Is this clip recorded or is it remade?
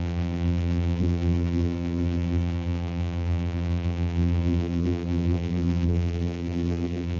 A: remade